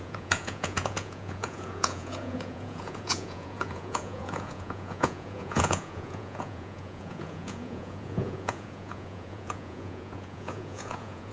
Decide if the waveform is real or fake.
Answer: fake